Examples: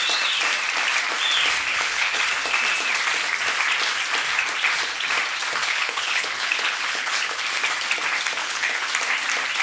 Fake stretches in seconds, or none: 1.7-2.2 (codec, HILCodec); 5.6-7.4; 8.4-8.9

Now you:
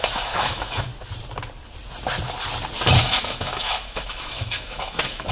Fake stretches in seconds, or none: 0.0-0.9 (autoencoder, DAC-VAE); 3.0-5.3

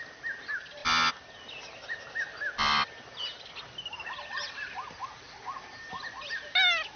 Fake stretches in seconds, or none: none